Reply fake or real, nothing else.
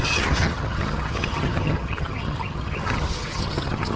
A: fake